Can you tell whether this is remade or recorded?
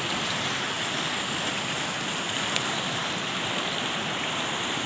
recorded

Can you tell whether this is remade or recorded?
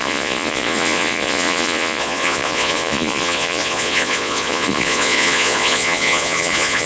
remade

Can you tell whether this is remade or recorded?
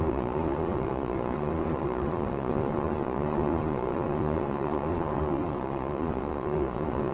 remade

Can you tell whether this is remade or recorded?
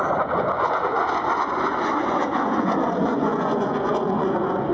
remade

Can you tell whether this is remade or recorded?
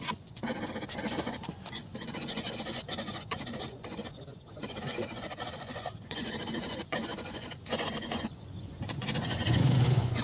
remade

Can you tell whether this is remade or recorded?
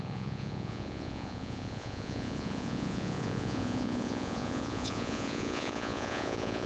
remade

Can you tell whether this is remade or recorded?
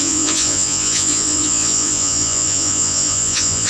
remade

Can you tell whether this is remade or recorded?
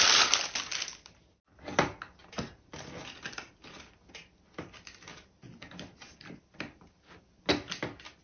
recorded